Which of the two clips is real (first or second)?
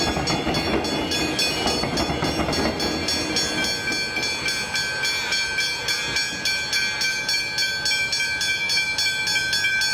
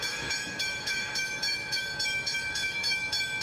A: first